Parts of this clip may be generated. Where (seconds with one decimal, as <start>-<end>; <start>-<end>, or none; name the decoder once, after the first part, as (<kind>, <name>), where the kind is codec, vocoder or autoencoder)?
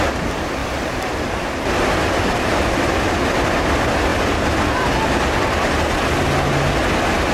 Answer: 0.6-2.8 (vocoder, BigVGAN v2)